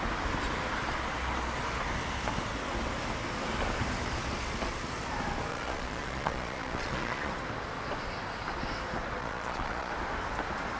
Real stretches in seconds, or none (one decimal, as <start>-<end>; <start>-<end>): 0.0-5.5; 7.3-9.2; 9.9-10.8